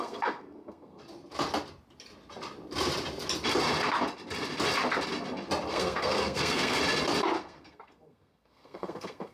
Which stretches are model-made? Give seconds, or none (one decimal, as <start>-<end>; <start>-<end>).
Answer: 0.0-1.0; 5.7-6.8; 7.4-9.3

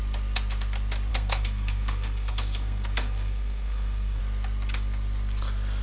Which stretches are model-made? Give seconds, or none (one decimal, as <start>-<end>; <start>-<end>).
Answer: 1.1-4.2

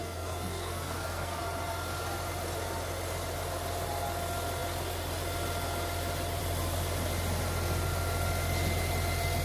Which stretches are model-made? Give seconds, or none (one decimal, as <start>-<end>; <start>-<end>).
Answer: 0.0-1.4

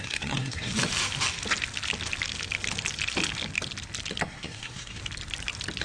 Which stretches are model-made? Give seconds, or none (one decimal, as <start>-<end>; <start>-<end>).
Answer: 0.0-0.7; 4.2-5.0

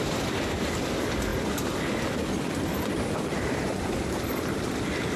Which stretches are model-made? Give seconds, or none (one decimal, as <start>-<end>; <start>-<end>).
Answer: none

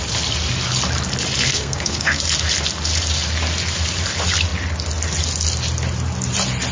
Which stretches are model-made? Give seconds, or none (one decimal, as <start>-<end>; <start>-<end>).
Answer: 1.5-2.2

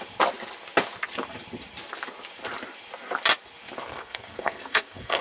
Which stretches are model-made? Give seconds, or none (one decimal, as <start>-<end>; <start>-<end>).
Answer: 3.9-5.2

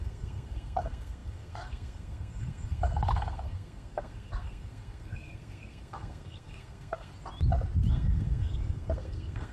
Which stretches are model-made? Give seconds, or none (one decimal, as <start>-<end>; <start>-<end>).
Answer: 0.0-7.1; 7.9-9.5